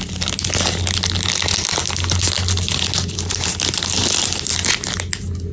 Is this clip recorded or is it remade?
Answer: recorded